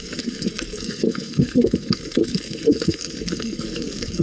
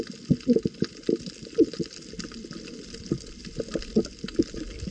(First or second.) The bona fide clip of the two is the second